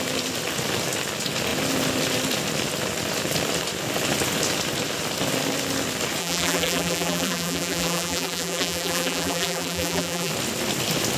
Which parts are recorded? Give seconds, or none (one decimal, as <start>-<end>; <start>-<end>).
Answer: 0.0-6.2; 10.3-11.2